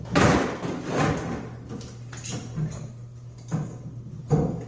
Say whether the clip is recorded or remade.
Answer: recorded